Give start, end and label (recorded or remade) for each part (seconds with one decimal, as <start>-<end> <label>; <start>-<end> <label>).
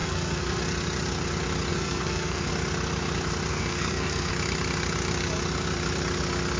0.0-0.6 remade; 0.6-1.7 recorded; 1.7-2.5 remade; 2.5-3.5 recorded; 3.5-4.3 remade; 4.3-6.6 recorded